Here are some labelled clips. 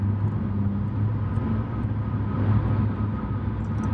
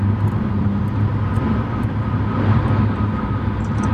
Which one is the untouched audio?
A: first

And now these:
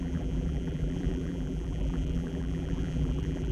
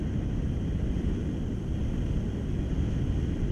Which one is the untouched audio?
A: second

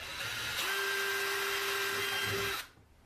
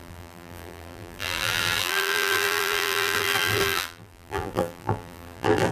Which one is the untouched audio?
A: first